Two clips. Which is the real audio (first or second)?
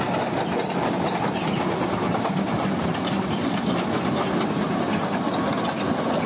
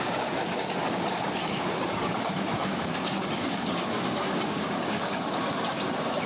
first